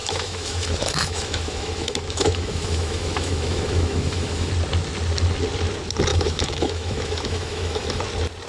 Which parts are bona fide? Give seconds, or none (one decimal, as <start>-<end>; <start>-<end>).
4.5-6.1; 8.0-8.5